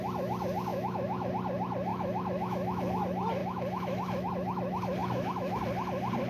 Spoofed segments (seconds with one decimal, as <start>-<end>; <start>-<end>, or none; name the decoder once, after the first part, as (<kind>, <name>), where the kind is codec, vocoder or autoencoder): 0.7-1.3 (autoencoder, DAC-VAE); 1.9-3.0; 3.4-4.3; 5.0-5.6